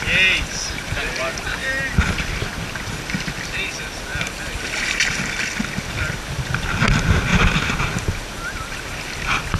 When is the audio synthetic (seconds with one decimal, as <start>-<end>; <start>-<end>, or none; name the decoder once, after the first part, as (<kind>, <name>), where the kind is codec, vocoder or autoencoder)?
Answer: none